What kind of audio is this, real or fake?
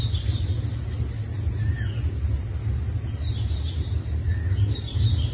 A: real